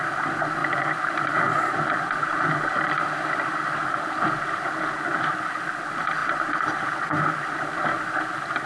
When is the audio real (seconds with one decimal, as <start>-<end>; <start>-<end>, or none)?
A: 0.0-0.6; 4.1-8.7